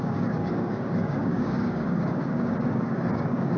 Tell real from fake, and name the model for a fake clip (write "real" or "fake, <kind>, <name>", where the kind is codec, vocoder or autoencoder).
fake, codec, DAC